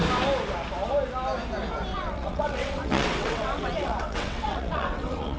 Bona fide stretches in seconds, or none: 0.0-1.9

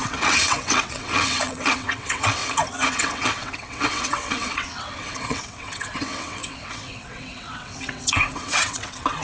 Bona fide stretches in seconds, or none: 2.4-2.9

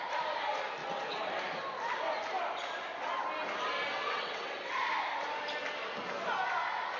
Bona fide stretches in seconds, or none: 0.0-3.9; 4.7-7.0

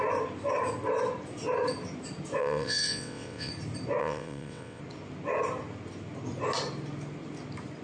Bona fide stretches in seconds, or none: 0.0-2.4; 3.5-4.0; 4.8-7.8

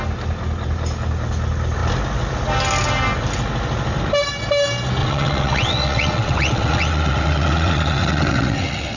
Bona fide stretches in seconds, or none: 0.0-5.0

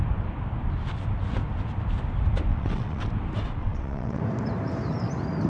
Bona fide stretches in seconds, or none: 0.0-2.5; 3.1-3.6; 4.2-5.5

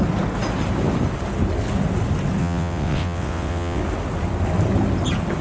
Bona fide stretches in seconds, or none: 0.0-2.4; 3.8-5.4